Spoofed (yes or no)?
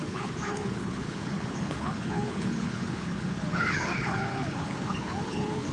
yes